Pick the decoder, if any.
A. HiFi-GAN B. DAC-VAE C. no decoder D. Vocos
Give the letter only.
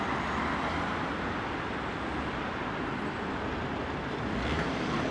C